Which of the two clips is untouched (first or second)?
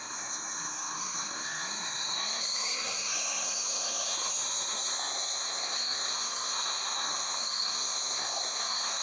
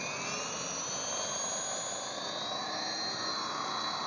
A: second